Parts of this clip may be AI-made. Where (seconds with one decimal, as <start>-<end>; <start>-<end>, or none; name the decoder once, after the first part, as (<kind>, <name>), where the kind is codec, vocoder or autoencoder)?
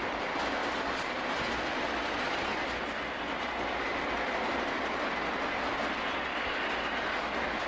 none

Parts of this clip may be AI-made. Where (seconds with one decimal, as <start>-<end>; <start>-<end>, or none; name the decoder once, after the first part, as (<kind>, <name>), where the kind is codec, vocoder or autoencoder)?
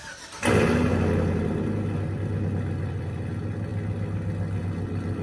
none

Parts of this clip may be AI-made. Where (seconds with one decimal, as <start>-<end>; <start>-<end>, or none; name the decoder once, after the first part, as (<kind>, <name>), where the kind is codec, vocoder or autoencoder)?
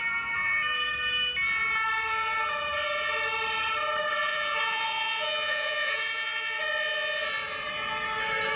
4.3-6.6 (vocoder, Vocos)